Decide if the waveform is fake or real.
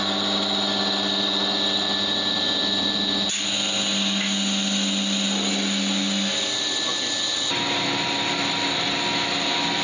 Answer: real